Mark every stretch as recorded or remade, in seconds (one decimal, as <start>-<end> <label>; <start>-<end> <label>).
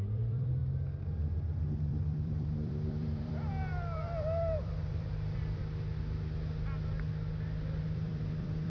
0.0-0.6 remade; 0.6-1.8 recorded; 1.8-5.6 remade; 5.6-7.8 recorded; 7.8-8.7 remade